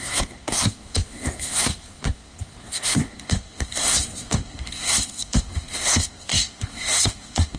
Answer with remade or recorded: remade